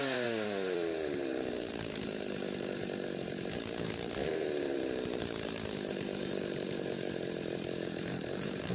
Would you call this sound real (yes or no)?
no